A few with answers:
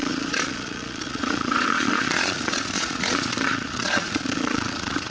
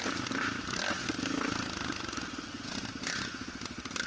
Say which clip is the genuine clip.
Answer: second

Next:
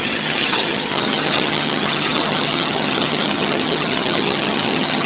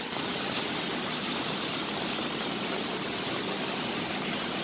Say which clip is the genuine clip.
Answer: second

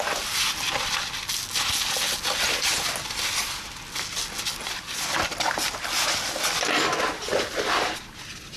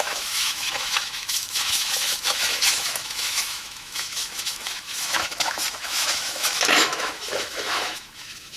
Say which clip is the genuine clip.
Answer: first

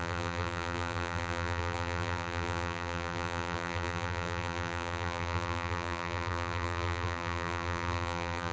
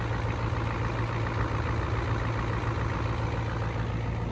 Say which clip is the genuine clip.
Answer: second